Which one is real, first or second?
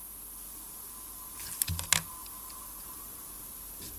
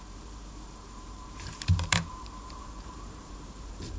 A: first